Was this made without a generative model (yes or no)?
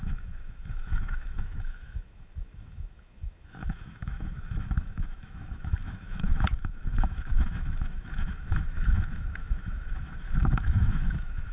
no